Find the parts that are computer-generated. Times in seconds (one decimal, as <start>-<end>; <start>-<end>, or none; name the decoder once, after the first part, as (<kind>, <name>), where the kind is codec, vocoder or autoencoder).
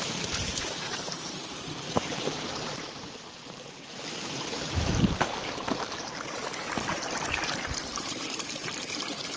0.0-4.9 (vocoder, BigVGAN v2); 5.5-9.4